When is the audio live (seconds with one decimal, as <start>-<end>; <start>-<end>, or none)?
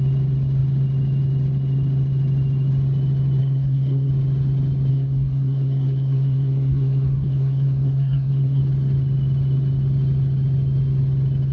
0.0-3.4; 4.1-4.9; 8.6-11.5